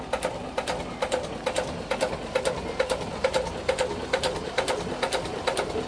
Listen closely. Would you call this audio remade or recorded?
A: recorded